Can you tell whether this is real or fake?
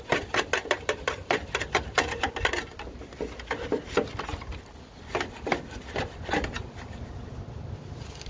real